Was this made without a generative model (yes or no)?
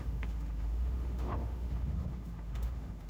no